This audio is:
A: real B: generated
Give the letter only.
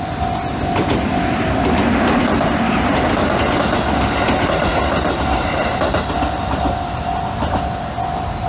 A